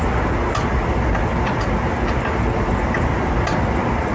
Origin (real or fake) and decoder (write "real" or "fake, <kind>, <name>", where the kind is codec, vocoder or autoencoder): real